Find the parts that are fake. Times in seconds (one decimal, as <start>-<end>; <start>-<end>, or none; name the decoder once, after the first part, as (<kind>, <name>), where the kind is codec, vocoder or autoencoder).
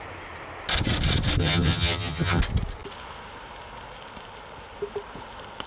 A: 1.4-2.4 (vocoder, HiFi-GAN)